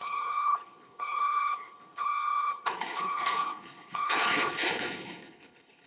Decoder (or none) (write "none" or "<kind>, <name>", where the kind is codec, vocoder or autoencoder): codec, HILCodec